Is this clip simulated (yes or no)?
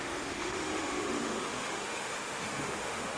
yes